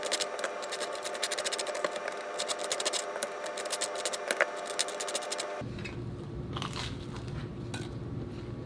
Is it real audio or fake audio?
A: real